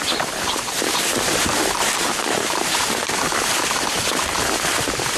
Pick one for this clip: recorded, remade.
remade